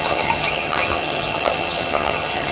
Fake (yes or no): yes